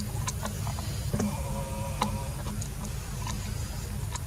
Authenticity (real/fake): real